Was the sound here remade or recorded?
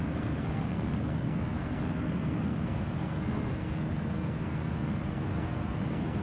remade